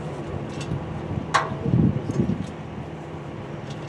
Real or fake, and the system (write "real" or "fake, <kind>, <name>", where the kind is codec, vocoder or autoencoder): real